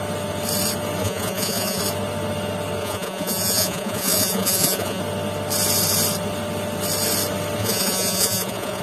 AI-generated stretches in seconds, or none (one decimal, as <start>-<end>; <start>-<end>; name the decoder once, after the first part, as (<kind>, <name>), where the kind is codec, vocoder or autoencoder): 1.0-1.8 (vocoder, Vocos); 2.8-5.0; 7.6-8.8